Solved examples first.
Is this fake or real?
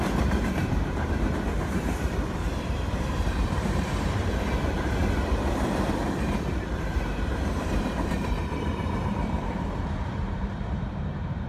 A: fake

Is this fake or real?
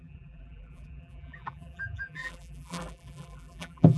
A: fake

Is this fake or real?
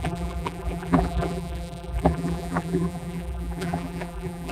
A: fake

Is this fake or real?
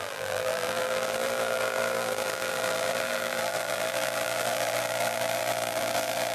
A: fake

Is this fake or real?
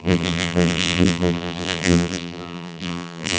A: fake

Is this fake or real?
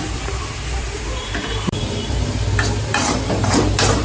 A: fake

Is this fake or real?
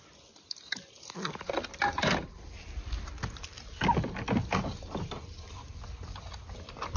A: real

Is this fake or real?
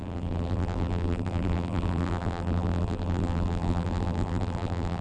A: fake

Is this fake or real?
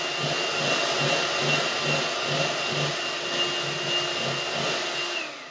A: real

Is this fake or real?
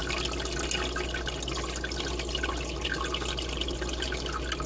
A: real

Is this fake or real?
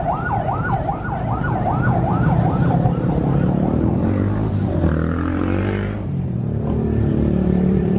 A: fake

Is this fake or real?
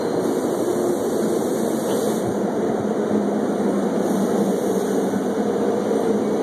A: real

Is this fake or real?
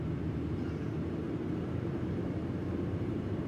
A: fake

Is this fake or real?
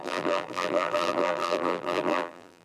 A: fake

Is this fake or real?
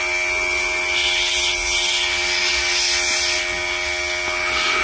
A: real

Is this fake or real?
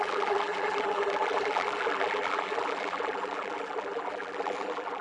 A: fake